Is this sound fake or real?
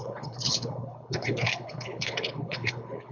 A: fake